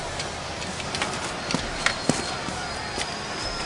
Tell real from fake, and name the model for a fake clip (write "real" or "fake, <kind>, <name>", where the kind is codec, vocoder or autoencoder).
real